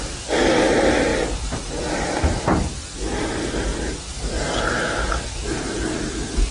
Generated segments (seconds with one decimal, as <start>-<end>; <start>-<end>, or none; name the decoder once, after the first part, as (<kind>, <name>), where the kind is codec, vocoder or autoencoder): none